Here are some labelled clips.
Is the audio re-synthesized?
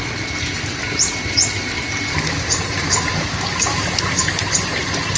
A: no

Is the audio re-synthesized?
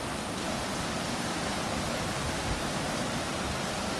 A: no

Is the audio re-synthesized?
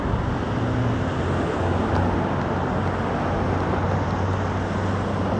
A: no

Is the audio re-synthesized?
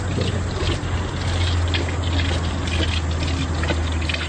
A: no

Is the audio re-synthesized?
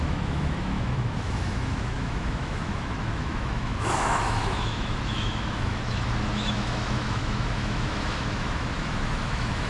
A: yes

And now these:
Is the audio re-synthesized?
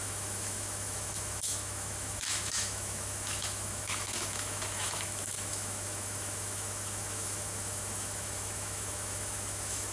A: yes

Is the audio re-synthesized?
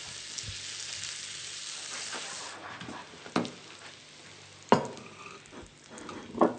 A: no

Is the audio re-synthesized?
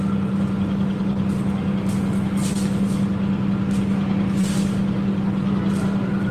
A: no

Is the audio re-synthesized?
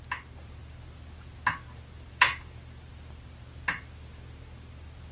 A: no